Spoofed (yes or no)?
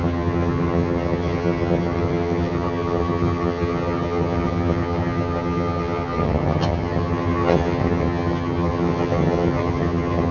yes